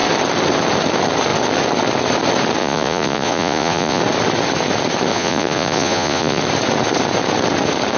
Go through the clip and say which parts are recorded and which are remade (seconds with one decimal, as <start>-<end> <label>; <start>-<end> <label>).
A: 0.0-2.6 recorded; 2.6-4.0 remade; 4.0-5.1 recorded; 5.1-6.4 remade; 6.4-8.0 recorded